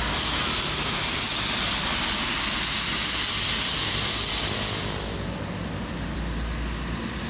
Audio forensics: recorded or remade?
recorded